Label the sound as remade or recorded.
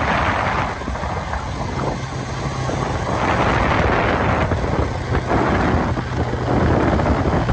recorded